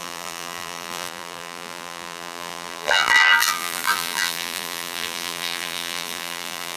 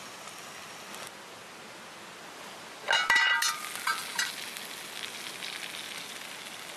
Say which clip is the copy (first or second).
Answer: first